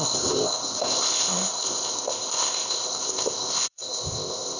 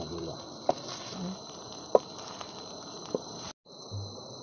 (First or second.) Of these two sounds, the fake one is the first